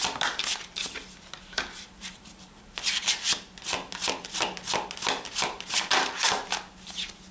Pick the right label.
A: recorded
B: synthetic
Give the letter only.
A